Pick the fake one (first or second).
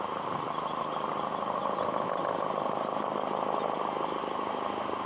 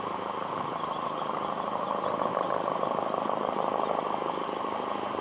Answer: second